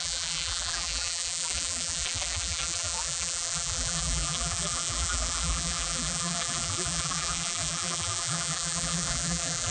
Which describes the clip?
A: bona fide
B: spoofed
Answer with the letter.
B